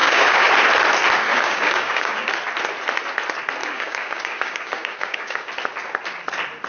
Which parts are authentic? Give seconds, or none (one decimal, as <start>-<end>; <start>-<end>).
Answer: 0.5-1.3; 2.3-3.6; 5.5-6.7